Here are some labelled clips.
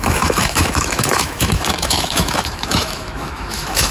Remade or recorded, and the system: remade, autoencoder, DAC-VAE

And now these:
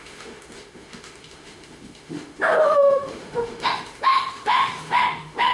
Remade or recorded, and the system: remade, autoencoder, DAC-VAE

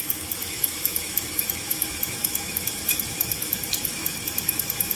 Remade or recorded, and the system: remade, autoencoder, DAC-VAE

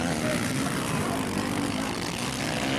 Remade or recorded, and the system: recorded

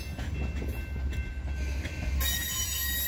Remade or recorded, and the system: recorded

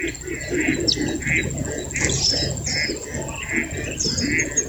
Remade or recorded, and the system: recorded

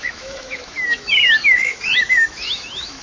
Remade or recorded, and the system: remade, autoencoder, DAC-VAE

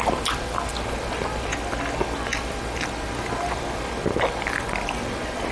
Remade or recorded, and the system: recorded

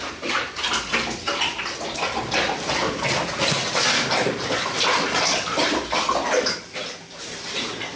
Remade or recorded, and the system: recorded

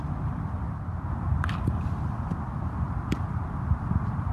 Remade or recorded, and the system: recorded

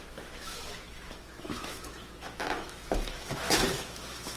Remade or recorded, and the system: remade, autoencoder, DAC-VAE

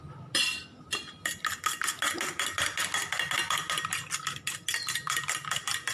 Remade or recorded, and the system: recorded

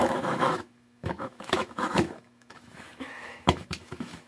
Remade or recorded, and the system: remade, autoencoder, DAC-VAE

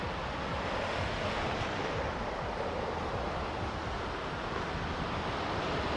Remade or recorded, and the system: recorded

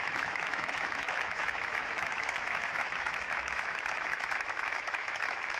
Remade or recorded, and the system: remade, autoencoder, DAC-VAE